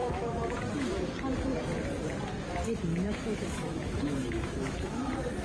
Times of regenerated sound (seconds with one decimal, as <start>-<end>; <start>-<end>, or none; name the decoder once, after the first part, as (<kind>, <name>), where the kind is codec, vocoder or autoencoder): 0.0-0.9 (autoencoder, DAC-VAE); 2.9-5.0